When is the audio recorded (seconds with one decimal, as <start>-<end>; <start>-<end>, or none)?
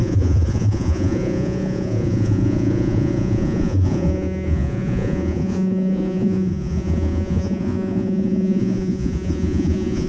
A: none